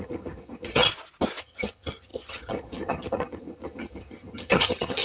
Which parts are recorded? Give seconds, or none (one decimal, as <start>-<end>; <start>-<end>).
0.9-1.4